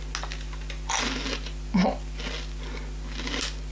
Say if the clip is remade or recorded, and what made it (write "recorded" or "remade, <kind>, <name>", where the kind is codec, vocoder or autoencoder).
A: recorded